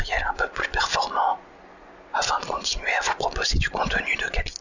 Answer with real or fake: real